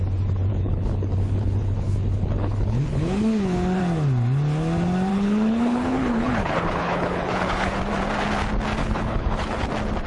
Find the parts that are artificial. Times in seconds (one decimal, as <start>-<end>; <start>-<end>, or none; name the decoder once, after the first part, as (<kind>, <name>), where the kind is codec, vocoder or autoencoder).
0.5-3.8 (codec, HILCodec); 5.1-7.8; 8.8-9.7